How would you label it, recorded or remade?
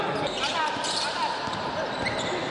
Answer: recorded